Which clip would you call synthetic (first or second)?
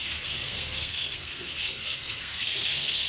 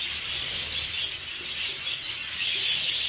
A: first